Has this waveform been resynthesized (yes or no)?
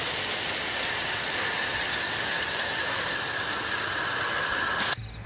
no